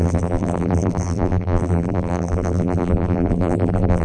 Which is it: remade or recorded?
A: remade